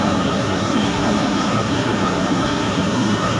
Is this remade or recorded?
remade